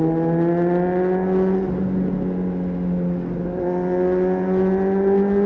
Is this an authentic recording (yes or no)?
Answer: yes